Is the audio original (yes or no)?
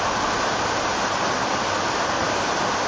yes